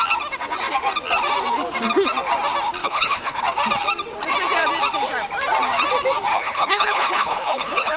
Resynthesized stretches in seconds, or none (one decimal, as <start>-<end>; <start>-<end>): 2.8-3.4; 6.3-8.0